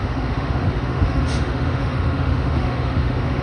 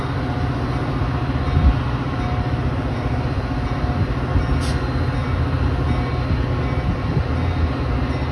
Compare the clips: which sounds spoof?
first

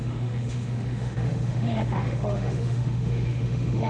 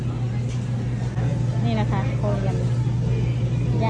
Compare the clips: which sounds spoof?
first